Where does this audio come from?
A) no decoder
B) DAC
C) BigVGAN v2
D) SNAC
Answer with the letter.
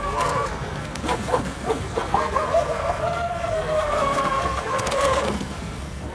D